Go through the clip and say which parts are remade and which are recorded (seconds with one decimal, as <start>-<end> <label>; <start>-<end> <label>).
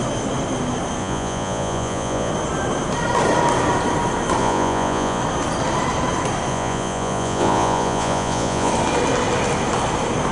0.0-1.0 recorded; 1.0-2.3 remade; 2.3-4.4 recorded; 4.4-5.2 remade; 5.2-6.5 recorded; 6.5-8.7 remade; 8.7-10.3 recorded